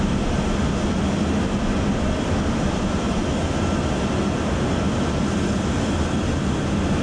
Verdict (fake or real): real